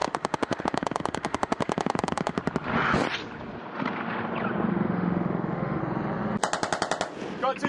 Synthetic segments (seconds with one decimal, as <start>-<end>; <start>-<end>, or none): 0.0-2.4; 4.7-5.8